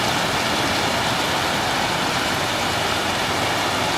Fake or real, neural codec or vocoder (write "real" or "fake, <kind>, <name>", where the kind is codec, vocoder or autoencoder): real